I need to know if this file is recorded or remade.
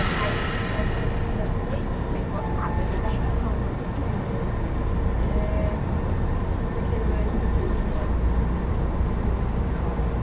recorded